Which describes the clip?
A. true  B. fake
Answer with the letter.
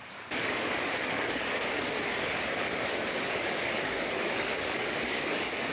B